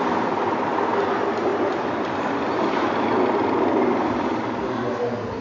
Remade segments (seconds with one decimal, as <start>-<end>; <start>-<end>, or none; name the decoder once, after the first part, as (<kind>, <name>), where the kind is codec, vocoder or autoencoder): none